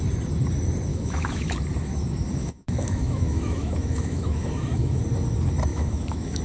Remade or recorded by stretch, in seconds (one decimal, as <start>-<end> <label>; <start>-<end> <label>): 0.0-0.9 recorded; 0.9-1.5 remade; 1.5-2.4 recorded; 2.4-5.0 remade; 5.0-5.7 recorded; 5.7-6.4 remade